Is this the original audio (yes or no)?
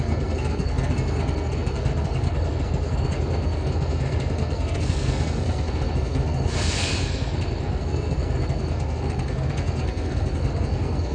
no